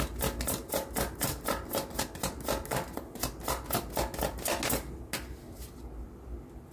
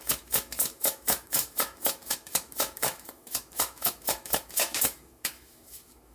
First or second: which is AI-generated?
second